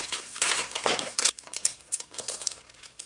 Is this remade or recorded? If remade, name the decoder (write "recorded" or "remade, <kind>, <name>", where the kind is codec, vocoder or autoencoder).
remade, codec, SNAC